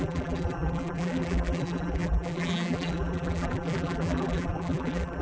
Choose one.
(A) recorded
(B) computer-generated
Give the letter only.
B